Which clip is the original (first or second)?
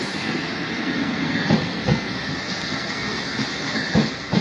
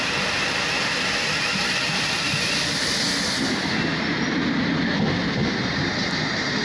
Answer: second